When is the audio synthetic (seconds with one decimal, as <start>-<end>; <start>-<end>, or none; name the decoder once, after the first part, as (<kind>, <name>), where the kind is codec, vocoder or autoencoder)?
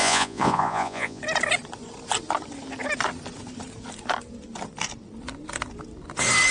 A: 0.0-1.2 (vocoder, Vocos)